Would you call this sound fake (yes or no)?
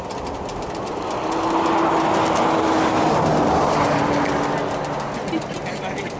no